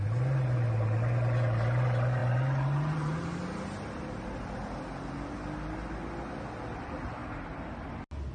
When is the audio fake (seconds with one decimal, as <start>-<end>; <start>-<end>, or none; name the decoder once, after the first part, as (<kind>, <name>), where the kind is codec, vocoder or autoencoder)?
none